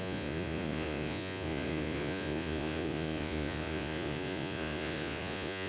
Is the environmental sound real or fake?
fake